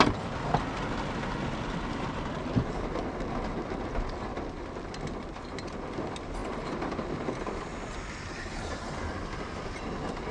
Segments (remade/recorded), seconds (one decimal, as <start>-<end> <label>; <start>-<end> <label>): 0.0-10.3 recorded

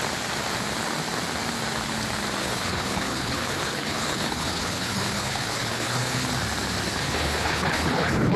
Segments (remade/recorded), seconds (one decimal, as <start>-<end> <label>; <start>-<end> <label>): 0.0-2.4 recorded; 2.4-6.3 remade; 6.3-6.9 recorded; 6.9-8.4 remade

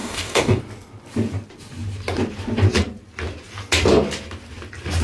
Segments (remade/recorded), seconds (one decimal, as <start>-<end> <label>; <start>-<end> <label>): 0.0-0.6 remade; 0.6-5.0 recorded

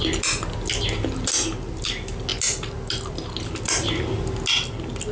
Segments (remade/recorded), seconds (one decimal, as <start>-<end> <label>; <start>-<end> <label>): 0.0-5.1 recorded

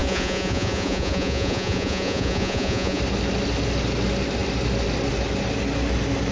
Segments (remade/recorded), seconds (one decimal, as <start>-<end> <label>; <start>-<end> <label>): 0.0-3.0 remade; 3.0-6.3 recorded

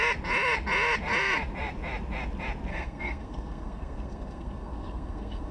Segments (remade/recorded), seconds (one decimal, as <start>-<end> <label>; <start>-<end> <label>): 0.0-2.7 recorded; 2.7-5.5 remade

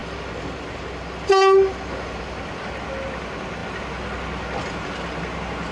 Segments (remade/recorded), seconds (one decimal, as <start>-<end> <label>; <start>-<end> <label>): 0.0-5.7 recorded

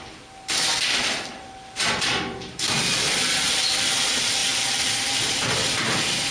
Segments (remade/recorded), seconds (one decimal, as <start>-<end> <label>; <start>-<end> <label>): 0.0-4.4 remade; 4.4-5.2 recorded; 5.2-6.3 remade